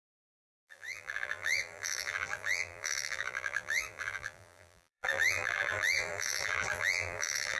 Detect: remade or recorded remade